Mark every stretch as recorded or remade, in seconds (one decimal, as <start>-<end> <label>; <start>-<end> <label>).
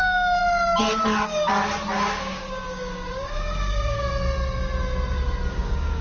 0.0-0.4 remade; 0.4-2.1 recorded; 2.1-4.1 remade; 4.1-5.5 recorded; 5.5-6.0 remade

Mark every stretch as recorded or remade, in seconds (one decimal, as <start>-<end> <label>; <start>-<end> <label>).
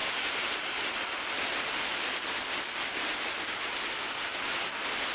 0.0-5.1 recorded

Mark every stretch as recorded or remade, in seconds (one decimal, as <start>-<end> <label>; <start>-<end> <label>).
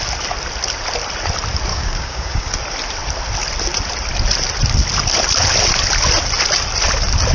0.0-1.7 recorded; 1.7-2.5 remade; 2.5-7.3 recorded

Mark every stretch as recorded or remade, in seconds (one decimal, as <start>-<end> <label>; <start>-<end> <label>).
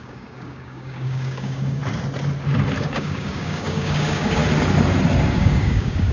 0.0-1.8 remade; 1.8-2.8 recorded; 2.8-4.4 remade; 4.4-5.3 recorded; 5.3-6.1 remade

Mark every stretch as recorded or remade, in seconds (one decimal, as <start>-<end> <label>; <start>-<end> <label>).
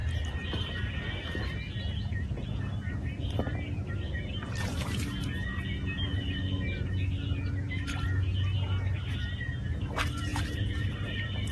0.0-11.5 recorded